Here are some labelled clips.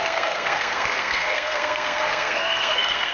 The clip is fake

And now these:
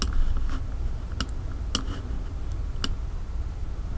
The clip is real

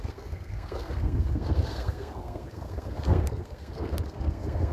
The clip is fake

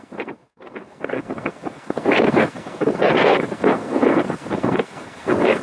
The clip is fake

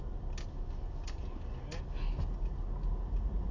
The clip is real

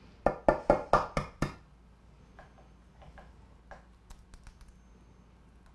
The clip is real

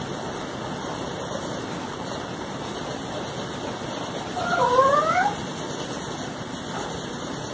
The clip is real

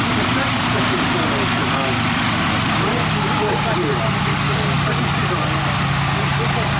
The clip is real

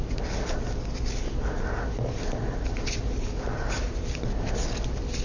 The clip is real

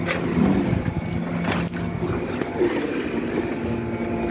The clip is real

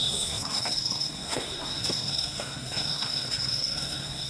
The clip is fake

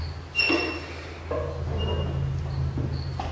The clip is real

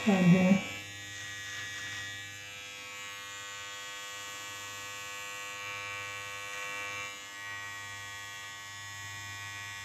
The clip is real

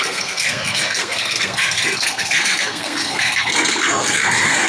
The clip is fake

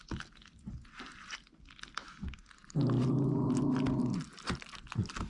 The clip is real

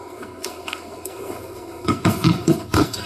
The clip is fake